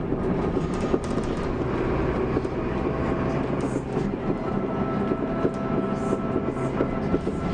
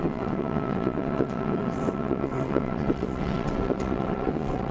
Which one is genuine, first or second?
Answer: first